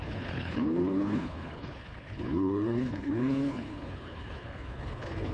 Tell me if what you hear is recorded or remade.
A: remade